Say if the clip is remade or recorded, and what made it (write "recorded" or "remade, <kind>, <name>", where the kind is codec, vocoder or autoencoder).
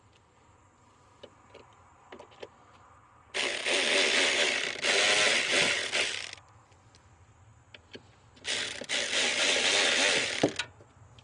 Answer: recorded